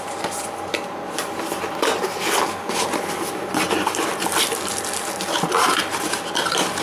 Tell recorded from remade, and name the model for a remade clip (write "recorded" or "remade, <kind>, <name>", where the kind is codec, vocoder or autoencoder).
recorded